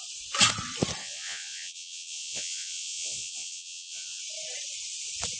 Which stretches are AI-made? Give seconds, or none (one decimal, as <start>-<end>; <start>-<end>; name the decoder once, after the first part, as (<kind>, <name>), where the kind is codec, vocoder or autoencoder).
1.0-4.2 (vocoder, Vocos)